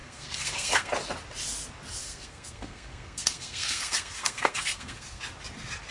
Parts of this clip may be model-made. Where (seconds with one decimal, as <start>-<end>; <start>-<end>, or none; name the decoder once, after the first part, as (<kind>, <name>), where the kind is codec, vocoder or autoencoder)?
0.0-0.9 (codec, SNAC); 2.0-5.2